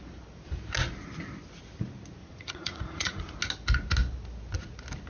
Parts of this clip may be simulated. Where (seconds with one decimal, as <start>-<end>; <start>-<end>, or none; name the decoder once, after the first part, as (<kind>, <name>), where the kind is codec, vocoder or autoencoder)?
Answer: 2.2-3.2 (vocoder, Vocos)